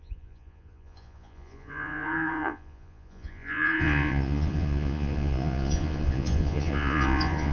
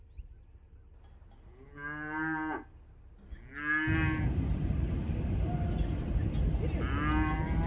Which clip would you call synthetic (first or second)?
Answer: first